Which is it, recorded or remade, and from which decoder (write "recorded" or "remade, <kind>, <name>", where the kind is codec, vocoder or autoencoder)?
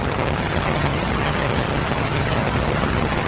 remade, vocoder, HiFi-GAN